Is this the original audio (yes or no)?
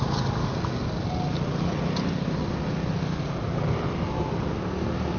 yes